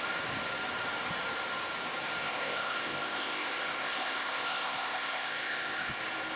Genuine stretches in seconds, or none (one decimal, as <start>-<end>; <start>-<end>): 0.0-2.2; 6.0-6.4

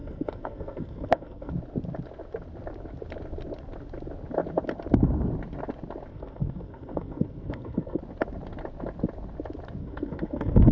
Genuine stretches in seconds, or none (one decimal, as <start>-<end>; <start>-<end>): 1.5-6.1; 8.0-9.8